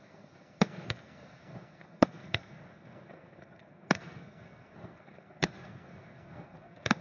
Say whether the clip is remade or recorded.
remade